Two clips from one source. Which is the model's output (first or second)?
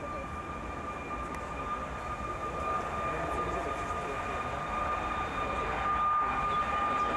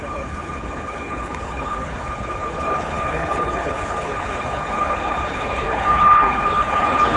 second